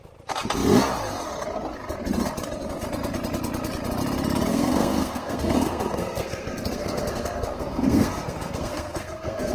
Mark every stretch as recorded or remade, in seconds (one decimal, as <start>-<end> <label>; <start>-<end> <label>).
0.0-4.5 recorded; 4.5-9.5 remade